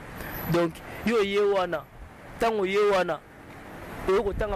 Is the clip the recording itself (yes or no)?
yes